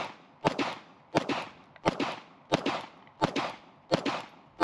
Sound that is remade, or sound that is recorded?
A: recorded